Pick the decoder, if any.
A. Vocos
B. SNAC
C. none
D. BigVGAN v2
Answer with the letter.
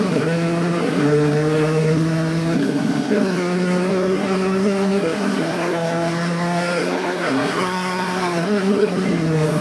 B